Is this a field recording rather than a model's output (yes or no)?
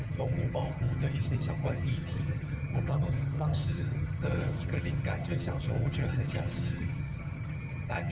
no